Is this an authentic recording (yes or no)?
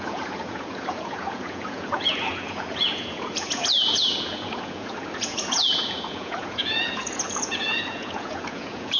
no